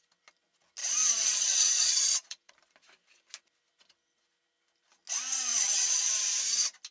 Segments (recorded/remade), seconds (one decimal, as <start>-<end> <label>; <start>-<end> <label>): 0.0-0.8 recorded; 0.8-2.5 remade; 2.5-5.5 recorded; 5.5-6.1 remade; 6.1-6.9 recorded